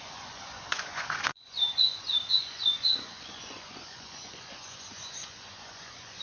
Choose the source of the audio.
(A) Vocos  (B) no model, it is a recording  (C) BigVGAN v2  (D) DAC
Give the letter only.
A